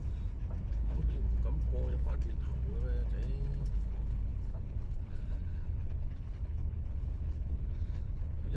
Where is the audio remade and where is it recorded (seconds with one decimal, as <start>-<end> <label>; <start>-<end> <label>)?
0.0-0.7 recorded; 0.7-1.2 remade; 1.2-1.9 recorded; 1.9-2.5 remade; 2.5-3.6 recorded; 3.6-8.6 remade